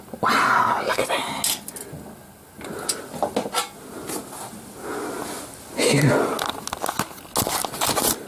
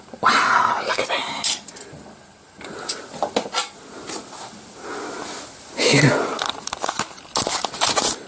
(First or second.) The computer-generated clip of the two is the second